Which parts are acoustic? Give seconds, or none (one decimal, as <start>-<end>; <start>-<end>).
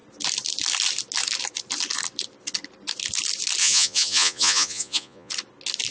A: 0.0-3.6; 5.3-5.9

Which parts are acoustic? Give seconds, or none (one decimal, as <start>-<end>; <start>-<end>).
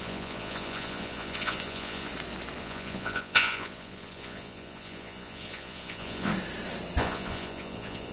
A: 2.1-2.6; 6.3-7.0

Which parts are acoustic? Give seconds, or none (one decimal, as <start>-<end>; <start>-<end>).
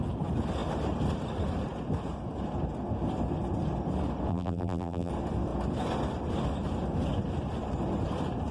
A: 0.0-4.3; 5.1-8.5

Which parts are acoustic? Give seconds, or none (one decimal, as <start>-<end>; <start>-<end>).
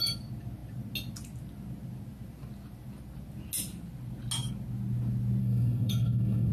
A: 0.0-5.4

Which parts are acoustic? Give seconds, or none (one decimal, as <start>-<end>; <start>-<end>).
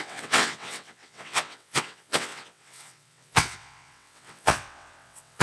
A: none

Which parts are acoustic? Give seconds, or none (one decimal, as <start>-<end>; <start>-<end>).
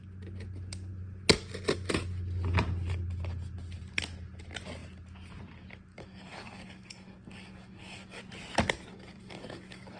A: 0.0-5.9; 8.2-8.9